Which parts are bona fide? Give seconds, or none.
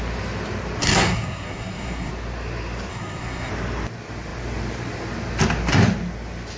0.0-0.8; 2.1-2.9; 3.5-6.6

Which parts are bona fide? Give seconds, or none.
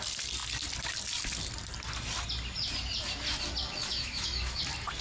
0.0-3.8; 4.6-5.0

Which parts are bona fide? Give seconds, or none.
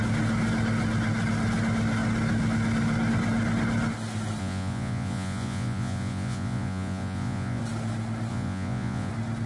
0.0-4.4; 7.6-8.3; 9.1-9.5